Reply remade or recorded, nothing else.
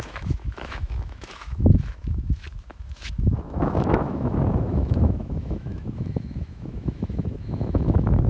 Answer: remade